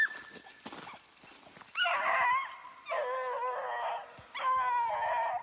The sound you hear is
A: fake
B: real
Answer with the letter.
B